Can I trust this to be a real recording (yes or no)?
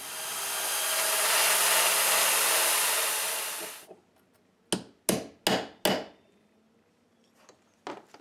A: yes